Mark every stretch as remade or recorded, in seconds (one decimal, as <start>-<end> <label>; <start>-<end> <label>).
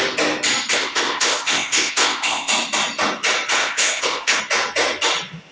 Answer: 0.0-0.7 recorded; 0.7-2.5 remade; 2.5-3.6 recorded; 3.6-4.4 remade; 4.4-5.5 recorded